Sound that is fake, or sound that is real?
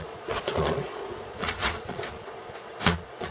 fake